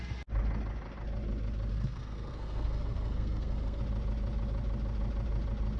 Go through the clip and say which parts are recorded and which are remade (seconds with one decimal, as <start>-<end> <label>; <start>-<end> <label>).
0.0-1.7 recorded; 1.7-3.8 remade; 3.8-5.8 recorded